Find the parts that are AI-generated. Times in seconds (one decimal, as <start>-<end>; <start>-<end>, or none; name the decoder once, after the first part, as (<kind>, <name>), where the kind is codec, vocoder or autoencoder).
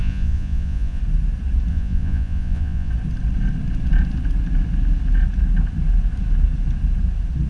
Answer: 0.0-1.0 (vocoder, Vocos); 1.7-2.9